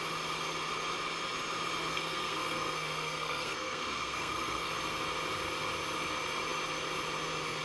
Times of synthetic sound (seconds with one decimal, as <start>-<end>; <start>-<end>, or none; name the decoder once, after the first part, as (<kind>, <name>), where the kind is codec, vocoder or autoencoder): 1.9-4.7 (codec, SNAC)